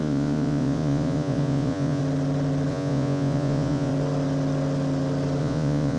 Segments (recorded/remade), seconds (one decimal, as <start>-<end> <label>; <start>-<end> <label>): 0.0-2.0 remade; 2.0-2.7 recorded; 2.7-3.9 remade; 3.9-5.4 recorded; 5.4-6.0 remade